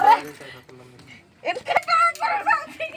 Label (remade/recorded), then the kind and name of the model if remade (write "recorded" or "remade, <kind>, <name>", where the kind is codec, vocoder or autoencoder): recorded